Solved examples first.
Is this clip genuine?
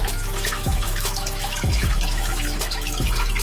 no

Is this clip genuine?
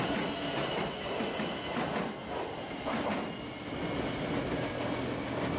yes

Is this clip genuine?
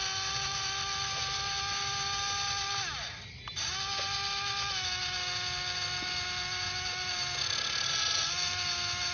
yes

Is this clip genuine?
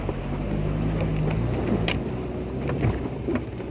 yes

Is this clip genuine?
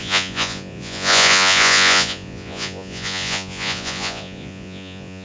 no